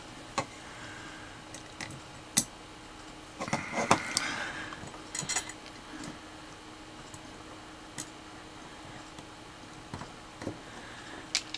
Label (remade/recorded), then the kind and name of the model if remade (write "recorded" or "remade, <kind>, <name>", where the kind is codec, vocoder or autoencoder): recorded